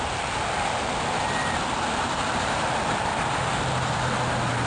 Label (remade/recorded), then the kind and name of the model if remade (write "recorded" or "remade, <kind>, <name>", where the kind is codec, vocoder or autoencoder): remade, vocoder, BigVGAN v2